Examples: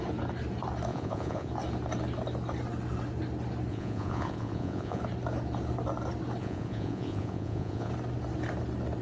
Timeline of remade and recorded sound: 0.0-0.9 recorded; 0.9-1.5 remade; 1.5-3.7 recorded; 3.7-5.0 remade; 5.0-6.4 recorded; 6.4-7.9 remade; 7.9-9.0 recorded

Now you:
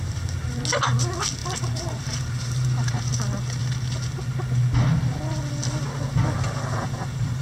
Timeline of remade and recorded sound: 0.0-1.4 recorded; 1.4-3.0 remade; 3.0-7.4 recorded

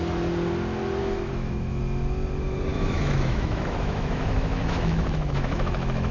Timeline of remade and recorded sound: 0.0-1.0 recorded; 1.0-1.8 remade; 1.8-2.7 recorded; 2.7-6.1 remade

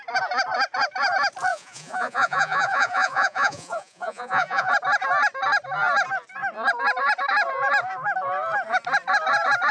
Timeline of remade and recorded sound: 0.0-1.5 recorded; 1.5-4.7 remade; 4.7-9.7 recorded

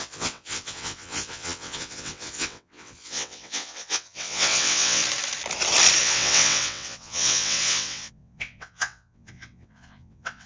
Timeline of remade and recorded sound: 0.0-5.0 remade; 5.0-6.0 recorded; 6.0-10.5 remade

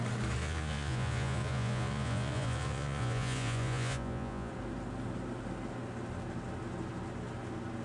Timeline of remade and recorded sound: 0.0-0.4 recorded; 0.4-4.5 remade; 4.5-7.8 recorded